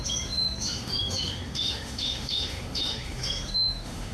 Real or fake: fake